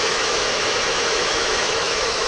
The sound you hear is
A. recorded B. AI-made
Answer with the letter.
B